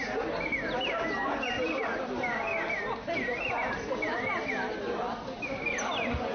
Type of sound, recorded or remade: recorded